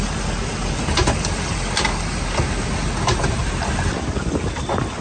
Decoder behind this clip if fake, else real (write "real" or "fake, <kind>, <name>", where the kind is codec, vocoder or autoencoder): real